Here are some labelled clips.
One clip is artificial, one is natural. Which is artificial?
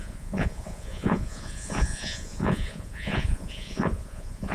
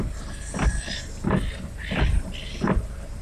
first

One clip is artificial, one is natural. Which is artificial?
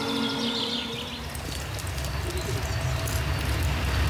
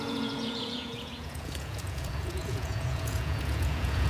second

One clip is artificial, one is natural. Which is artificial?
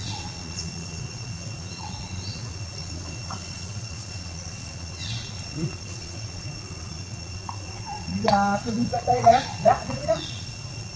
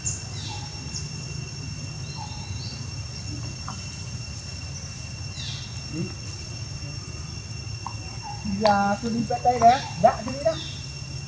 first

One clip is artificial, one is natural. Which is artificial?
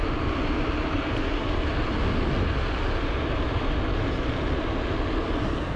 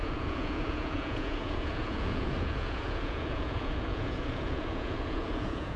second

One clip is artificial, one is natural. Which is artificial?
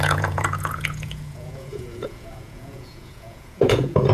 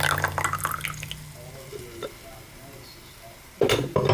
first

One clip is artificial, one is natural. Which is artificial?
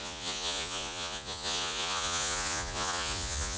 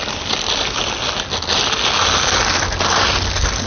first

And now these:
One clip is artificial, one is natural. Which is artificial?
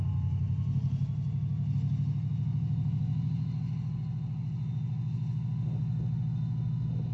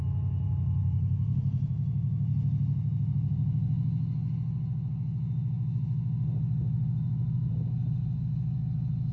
second